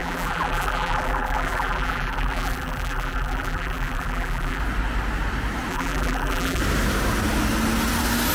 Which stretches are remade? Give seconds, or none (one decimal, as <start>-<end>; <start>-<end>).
0.0-4.6; 5.7-6.6